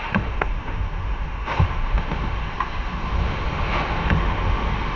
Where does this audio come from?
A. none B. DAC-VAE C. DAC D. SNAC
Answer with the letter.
B